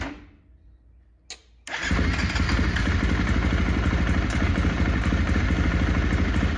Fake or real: real